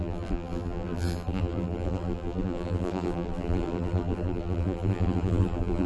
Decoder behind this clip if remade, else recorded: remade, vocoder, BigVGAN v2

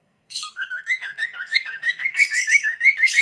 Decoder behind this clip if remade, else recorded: remade, codec, SNAC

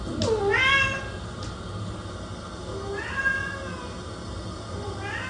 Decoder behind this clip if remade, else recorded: recorded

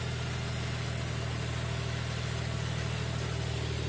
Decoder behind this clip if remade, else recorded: recorded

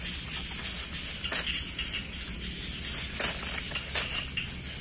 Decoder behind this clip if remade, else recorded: recorded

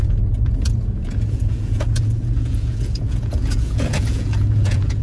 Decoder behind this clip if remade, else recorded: remade, vocoder, Vocos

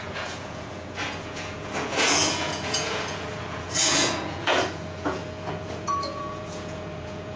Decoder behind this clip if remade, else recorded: remade, vocoder, Vocos